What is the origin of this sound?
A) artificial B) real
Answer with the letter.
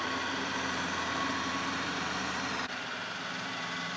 A